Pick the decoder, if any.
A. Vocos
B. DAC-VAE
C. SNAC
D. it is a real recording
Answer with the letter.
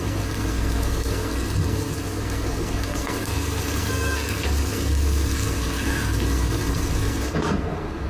C